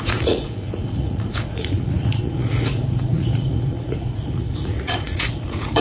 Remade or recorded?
remade